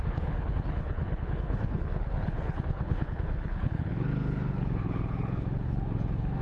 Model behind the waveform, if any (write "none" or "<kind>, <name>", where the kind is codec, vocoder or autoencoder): codec, HILCodec